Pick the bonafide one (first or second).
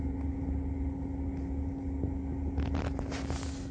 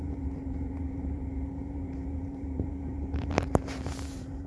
first